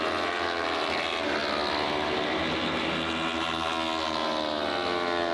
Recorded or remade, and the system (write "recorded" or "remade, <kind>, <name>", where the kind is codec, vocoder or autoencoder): recorded